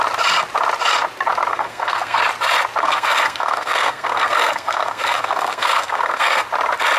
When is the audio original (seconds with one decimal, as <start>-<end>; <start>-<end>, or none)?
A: 0.0-1.5; 2.2-2.8; 6.4-7.0